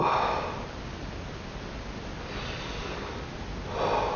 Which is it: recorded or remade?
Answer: recorded